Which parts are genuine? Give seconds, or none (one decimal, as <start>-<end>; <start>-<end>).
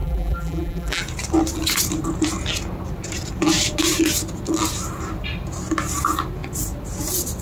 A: 1.0-7.4